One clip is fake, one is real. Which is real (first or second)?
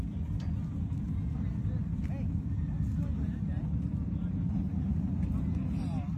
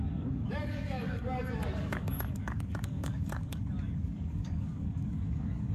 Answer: first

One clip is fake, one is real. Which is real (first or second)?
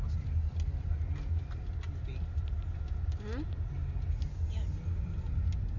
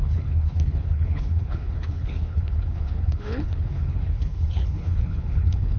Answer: first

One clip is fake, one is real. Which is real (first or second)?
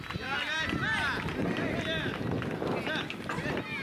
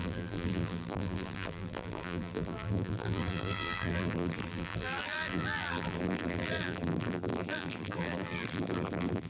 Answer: first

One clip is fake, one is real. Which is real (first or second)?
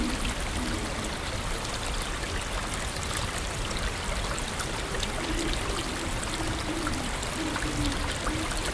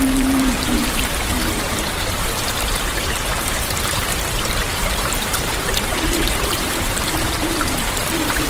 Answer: first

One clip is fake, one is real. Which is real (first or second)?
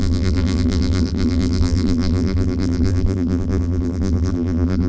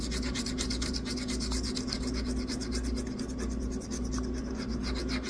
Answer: second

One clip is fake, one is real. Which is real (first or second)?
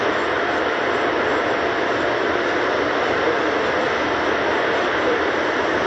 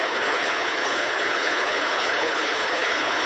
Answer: first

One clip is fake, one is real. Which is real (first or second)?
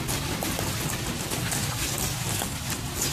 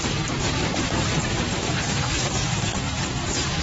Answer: first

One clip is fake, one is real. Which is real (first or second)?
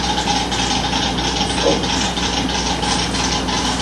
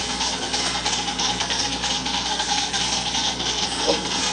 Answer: first